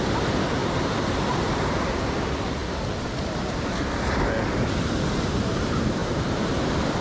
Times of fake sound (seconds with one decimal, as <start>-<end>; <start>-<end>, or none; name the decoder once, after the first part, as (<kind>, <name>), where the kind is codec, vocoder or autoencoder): 0.6-1.7 (vocoder, BigVGAN v2); 6.0-6.5